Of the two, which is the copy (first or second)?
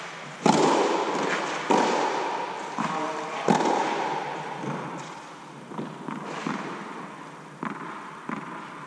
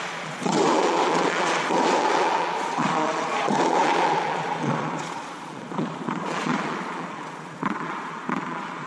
second